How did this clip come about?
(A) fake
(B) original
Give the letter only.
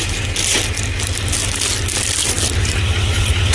B